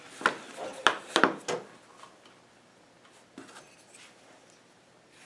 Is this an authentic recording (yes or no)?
yes